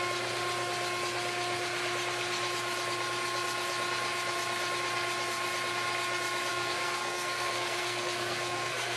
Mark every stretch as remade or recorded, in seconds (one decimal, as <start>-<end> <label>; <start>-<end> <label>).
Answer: 0.0-6.5 recorded; 6.5-9.0 remade